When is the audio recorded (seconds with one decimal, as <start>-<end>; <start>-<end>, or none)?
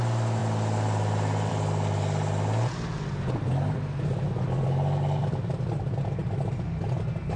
0.0-7.4